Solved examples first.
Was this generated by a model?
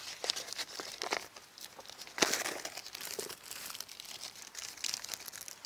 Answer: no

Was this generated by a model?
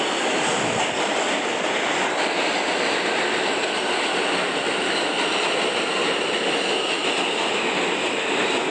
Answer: no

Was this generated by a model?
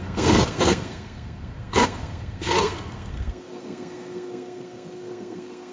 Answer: yes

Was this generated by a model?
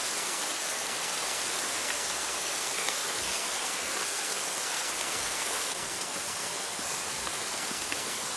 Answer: yes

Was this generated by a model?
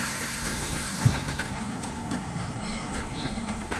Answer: yes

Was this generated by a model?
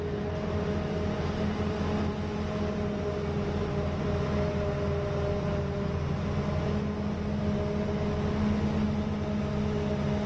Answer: no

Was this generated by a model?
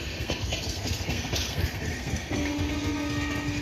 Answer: yes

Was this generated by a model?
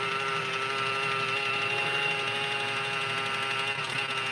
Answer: no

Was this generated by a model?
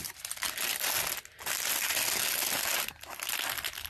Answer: no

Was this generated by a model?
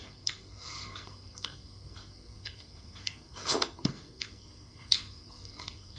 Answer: yes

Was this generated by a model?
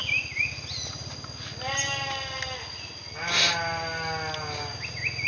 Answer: no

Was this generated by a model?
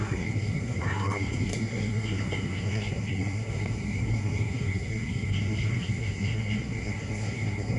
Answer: yes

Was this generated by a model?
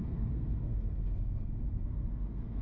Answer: yes